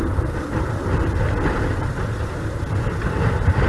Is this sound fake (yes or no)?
no